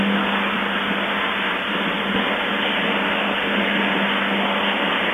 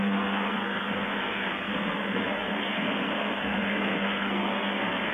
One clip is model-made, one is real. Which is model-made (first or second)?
second